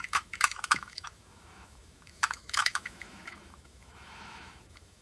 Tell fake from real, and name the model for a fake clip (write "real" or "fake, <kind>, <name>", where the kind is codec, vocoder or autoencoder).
fake, autoencoder, DAC-VAE